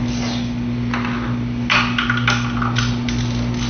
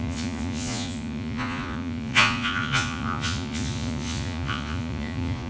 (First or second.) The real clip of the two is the first